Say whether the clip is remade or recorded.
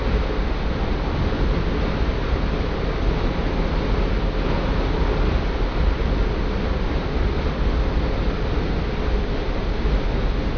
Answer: recorded